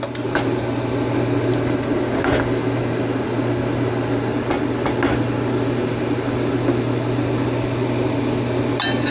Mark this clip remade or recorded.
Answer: recorded